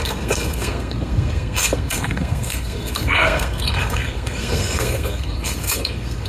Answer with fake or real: fake